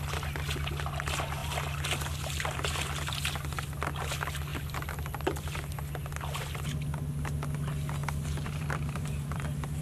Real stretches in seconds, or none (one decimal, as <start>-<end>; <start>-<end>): 0.0-8.0